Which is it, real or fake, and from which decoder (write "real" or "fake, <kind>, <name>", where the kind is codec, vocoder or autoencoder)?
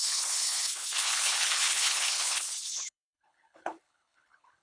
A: fake, codec, HILCodec